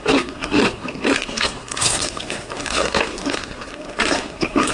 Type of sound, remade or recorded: remade